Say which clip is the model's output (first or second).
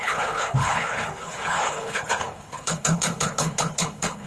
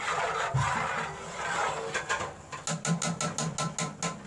first